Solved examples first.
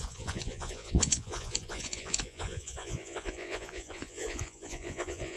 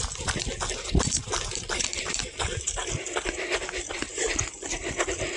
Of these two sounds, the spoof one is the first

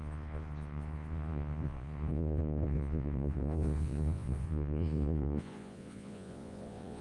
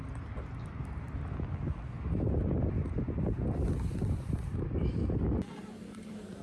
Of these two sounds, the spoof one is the first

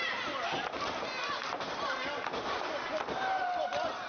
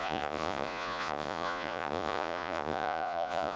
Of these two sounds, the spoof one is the second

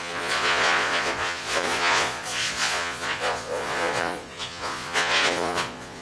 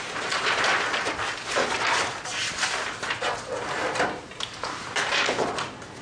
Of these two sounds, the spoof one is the first